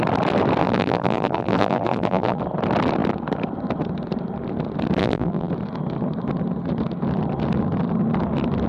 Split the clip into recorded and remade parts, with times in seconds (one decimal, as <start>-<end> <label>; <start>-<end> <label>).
0.0-0.6 recorded; 0.6-2.4 remade; 2.4-5.0 recorded; 5.0-5.5 remade; 5.5-8.7 recorded